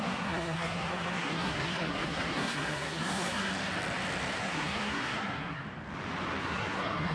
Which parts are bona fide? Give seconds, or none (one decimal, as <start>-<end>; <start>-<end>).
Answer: 3.5-4.4; 5.6-6.4